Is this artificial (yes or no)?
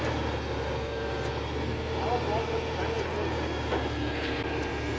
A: no